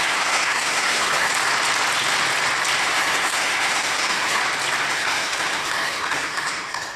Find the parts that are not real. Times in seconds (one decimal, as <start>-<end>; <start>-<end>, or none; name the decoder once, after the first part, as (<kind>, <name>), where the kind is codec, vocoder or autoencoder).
0.0-1.3 (codec, SNAC); 2.8-4.4; 4.9-7.0